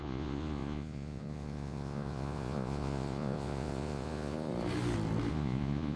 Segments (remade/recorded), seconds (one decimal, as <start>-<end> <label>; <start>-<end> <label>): 0.0-4.5 remade; 4.5-5.3 recorded; 5.3-6.0 remade